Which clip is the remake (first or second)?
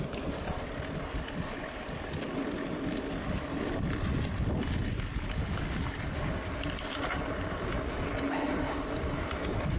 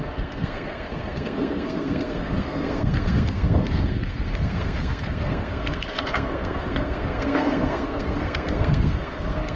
second